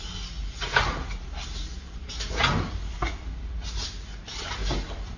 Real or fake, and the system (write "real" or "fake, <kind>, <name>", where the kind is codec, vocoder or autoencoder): real